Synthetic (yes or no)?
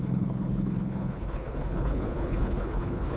yes